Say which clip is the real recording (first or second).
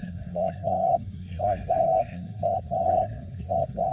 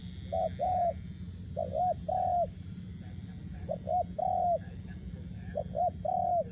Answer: second